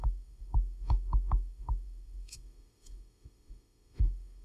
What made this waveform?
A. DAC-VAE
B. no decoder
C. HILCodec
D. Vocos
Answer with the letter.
A